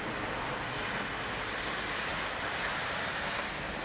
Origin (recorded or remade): recorded